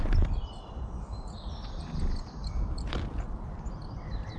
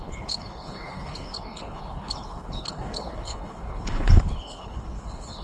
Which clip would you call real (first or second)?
first